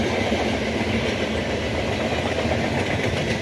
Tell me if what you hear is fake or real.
real